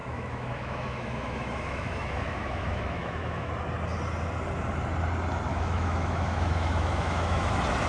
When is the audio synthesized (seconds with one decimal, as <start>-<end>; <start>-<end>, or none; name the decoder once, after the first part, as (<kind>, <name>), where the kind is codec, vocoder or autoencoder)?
0.0-3.5 (autoencoder, DAC-VAE); 5.5-7.5